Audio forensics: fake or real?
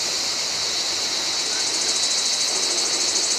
real